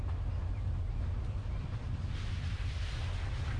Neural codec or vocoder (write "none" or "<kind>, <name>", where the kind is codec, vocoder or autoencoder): none